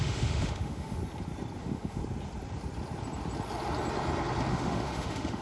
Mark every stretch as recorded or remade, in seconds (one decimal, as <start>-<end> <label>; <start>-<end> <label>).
0.0-1.0 remade; 1.0-1.6 recorded; 1.6-2.0 remade; 2.0-4.5 recorded; 4.5-5.4 remade